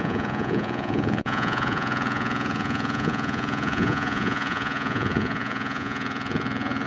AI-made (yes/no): yes